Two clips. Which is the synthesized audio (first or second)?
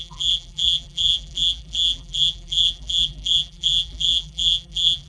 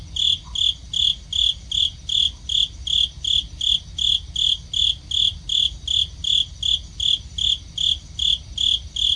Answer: first